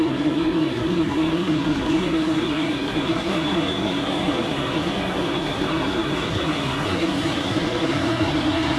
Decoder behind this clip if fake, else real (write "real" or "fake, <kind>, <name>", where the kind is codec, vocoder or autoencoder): fake, codec, SNAC